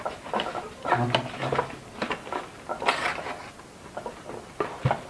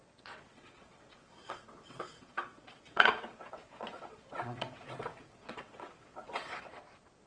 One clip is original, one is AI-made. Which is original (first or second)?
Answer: first